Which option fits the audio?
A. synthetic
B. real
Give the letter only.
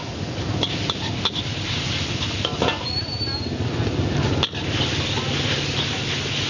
B